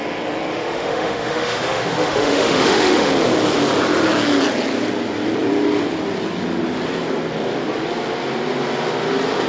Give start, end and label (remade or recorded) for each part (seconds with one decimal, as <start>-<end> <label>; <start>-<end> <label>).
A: 0.0-0.5 recorded; 0.5-3.1 remade; 3.1-9.5 recorded